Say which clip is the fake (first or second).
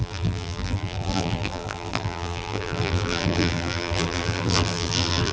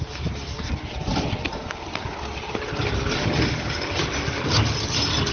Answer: first